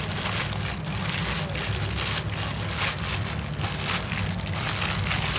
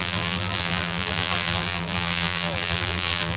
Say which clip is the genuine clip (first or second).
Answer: first